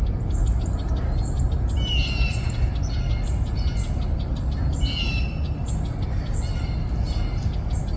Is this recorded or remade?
recorded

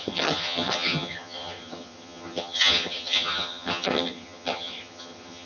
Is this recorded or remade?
remade